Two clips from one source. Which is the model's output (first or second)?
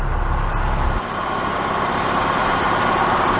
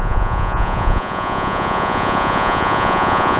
second